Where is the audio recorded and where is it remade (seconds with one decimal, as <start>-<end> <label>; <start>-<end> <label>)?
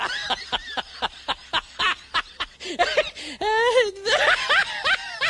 0.0-5.3 recorded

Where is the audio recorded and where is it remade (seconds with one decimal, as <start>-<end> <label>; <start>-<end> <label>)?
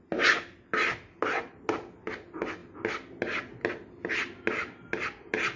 0.0-5.6 recorded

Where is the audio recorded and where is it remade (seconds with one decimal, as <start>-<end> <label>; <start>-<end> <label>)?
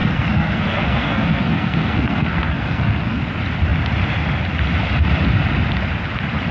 0.0-3.2 remade; 3.2-6.5 recorded